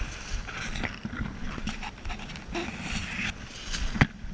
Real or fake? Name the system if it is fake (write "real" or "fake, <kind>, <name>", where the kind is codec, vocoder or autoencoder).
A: real